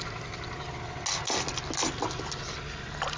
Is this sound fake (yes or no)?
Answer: no